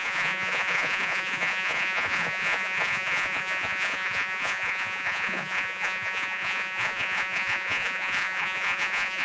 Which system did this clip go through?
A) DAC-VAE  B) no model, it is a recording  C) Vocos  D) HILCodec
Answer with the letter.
C